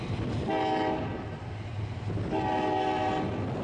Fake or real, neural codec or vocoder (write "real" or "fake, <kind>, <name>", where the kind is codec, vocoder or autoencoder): real